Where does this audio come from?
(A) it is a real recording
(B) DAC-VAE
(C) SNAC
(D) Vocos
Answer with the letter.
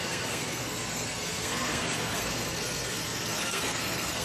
C